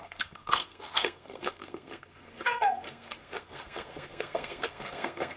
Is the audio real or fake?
fake